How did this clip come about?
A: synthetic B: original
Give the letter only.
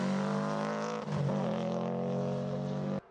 B